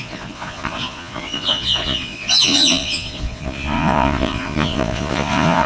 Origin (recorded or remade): remade